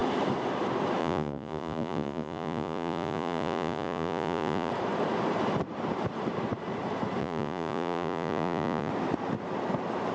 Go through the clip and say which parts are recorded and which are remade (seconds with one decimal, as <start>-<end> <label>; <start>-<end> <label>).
0.0-1.0 recorded; 1.0-4.7 remade; 4.7-7.2 recorded; 7.2-8.9 remade; 8.9-10.1 recorded

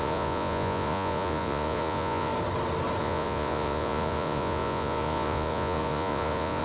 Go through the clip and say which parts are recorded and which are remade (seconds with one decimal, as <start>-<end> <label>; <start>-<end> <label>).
0.0-2.3 remade; 2.3-3.0 recorded; 3.0-6.6 remade

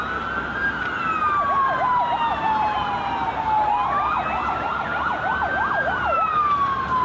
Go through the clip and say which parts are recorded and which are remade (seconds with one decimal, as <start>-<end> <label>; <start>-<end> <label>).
0.0-7.0 recorded

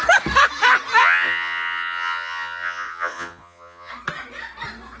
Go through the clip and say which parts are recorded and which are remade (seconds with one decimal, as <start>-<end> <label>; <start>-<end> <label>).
0.0-1.0 recorded; 1.0-3.9 remade; 3.9-5.0 recorded

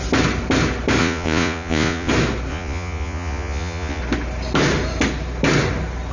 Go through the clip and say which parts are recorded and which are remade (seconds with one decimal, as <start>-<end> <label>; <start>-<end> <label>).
0.0-1.0 recorded; 1.0-2.1 remade; 2.1-2.5 recorded; 2.5-4.0 remade; 4.0-6.1 recorded

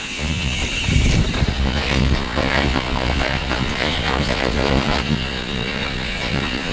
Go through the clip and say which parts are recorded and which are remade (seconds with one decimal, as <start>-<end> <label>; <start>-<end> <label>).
0.0-0.6 remade; 0.6-1.5 recorded; 1.5-6.7 remade

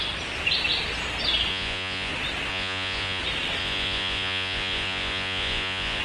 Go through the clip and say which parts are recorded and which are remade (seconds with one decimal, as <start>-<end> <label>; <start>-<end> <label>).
0.0-1.5 recorded; 1.5-2.1 remade; 2.1-2.5 recorded; 2.5-3.2 remade; 3.2-3.6 recorded; 3.6-6.0 remade